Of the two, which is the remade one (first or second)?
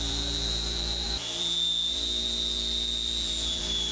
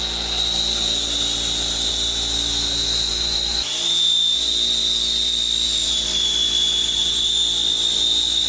first